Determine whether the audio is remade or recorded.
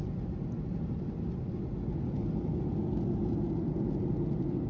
recorded